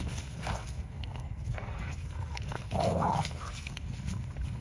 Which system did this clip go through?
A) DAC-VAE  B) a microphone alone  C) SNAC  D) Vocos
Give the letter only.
C